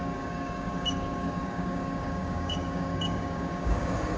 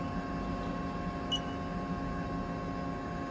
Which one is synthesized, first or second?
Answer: first